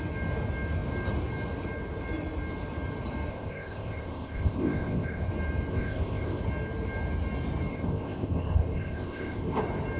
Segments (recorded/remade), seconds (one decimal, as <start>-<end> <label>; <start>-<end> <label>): 0.0-3.3 recorded; 3.3-5.3 remade; 5.3-5.7 recorded; 5.7-6.4 remade; 6.4-7.7 recorded; 7.7-9.6 remade; 9.6-10.0 recorded